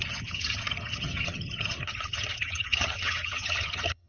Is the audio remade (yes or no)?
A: yes